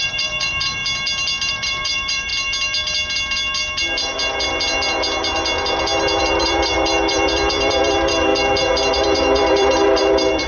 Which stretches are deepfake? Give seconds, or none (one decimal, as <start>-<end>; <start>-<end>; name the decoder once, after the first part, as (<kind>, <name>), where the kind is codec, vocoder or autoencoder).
0.0-0.8 (vocoder, BigVGAN v2); 1.5-2.3; 6.2-8.3; 8.9-10.5